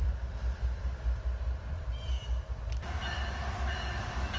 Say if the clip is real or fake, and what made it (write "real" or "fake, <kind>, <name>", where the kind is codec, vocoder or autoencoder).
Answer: fake, vocoder, BigVGAN v2